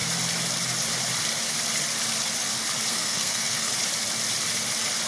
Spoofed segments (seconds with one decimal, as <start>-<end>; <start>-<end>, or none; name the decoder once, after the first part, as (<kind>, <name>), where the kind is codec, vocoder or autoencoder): 2.9-3.7 (codec, SNAC)